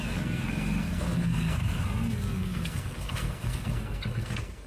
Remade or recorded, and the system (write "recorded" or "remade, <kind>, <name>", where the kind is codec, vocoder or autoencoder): remade, codec, SNAC